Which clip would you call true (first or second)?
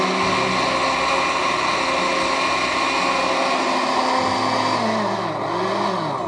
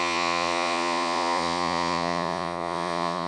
first